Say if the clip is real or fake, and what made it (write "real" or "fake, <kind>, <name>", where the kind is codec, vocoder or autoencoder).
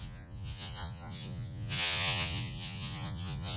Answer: fake, vocoder, Vocos